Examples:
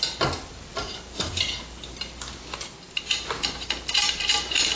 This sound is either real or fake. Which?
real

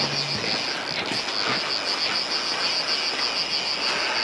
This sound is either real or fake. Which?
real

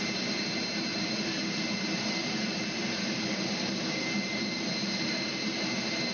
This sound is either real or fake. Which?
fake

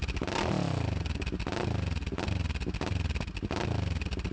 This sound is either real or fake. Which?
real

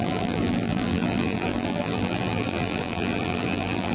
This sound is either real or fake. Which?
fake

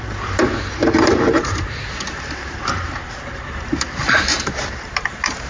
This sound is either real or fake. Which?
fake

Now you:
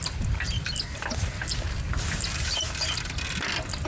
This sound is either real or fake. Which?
real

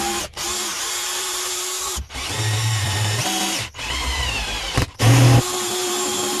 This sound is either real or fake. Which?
fake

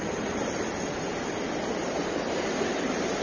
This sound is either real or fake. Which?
real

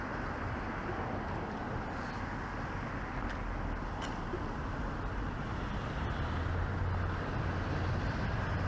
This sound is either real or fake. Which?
real